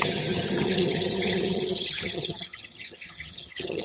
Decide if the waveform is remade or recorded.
remade